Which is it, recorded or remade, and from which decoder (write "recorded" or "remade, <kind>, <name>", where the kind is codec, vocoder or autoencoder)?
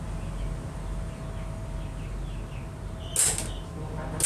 recorded